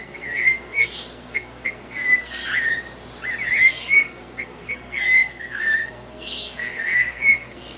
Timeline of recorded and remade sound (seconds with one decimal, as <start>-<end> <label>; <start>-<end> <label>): 0.0-2.4 remade; 2.4-3.7 recorded; 3.7-7.8 remade